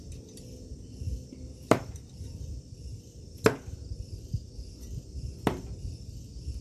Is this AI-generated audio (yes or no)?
no